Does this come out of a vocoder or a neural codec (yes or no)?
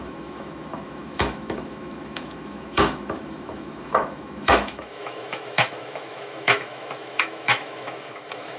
yes